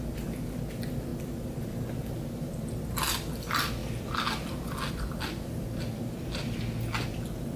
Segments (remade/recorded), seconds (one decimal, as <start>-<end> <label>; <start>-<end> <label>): 0.0-7.6 recorded